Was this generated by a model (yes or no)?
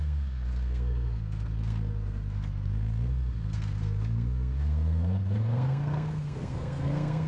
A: yes